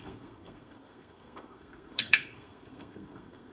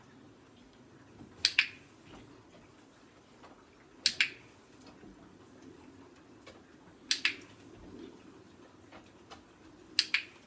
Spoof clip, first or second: first